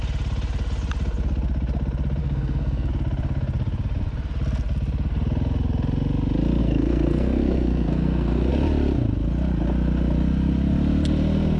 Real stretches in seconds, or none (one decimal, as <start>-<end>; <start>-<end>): 0.0-2.2; 2.9-6.6; 8.5-11.6